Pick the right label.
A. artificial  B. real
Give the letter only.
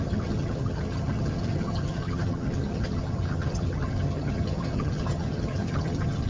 A